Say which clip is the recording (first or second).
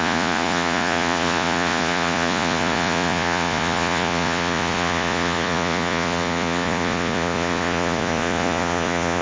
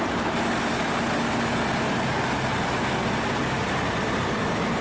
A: second